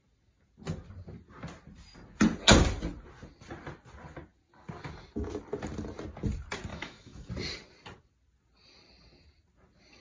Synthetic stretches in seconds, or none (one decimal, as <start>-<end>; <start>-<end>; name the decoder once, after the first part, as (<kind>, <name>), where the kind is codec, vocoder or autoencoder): 6.7-7.3 (autoencoder, DAC-VAE)